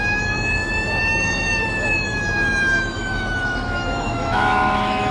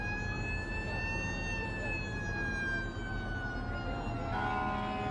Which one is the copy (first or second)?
first